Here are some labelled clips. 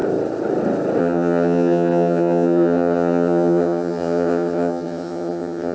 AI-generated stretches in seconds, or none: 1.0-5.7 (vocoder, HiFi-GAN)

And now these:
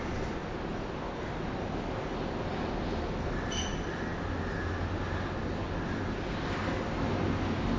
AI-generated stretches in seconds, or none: none

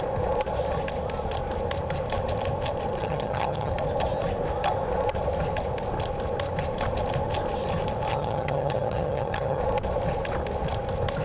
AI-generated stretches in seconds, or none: 3.0-3.7 (vocoder, HiFi-GAN); 8.1-9.6

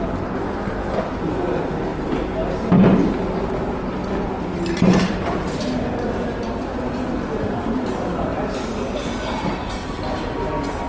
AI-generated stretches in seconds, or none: none

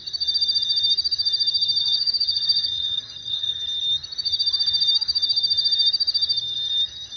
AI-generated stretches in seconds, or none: 1.8-3.6 (vocoder, HiFi-GAN)

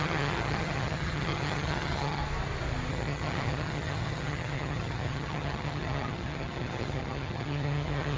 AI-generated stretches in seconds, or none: 0.0-2.2 (vocoder, HiFi-GAN); 2.9-8.2

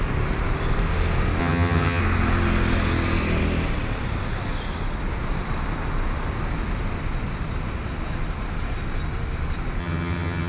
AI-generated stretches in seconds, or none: 1.4-2.0 (vocoder, HiFi-GAN); 9.8-10.5

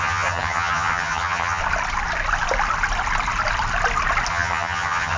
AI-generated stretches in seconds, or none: 0.0-1.6 (vocoder, HiFi-GAN); 4.3-5.2